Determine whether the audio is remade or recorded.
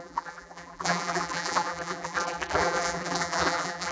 remade